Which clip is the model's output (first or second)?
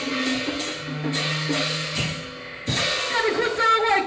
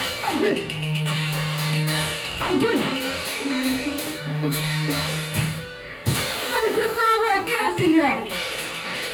second